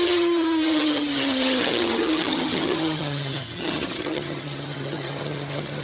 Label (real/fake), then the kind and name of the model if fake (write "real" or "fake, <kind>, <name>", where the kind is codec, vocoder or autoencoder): fake, vocoder, HiFi-GAN